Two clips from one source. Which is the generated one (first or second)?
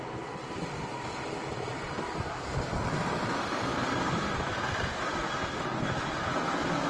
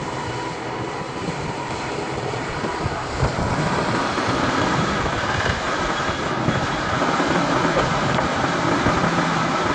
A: second